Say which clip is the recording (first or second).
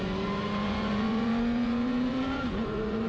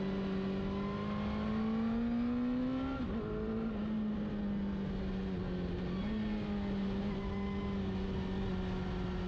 second